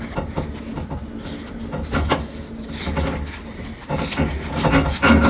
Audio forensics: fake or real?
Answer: real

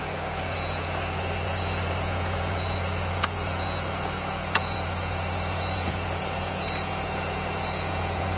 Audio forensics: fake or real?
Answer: fake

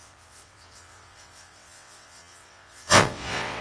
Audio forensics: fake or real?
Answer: fake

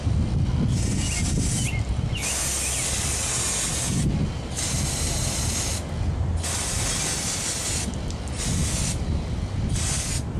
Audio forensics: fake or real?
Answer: real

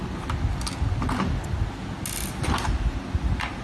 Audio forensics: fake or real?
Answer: real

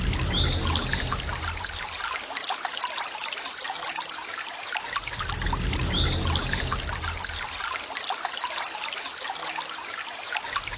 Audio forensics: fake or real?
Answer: real